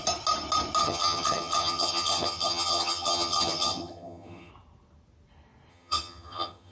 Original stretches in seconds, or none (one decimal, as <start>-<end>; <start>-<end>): 0.0-0.8; 4.5-5.7